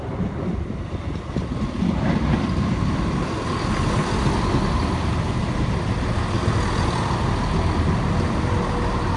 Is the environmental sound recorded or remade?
recorded